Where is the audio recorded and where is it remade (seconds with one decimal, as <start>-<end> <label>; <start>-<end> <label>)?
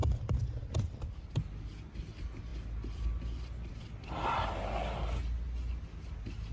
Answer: 0.0-1.3 remade; 1.3-6.5 recorded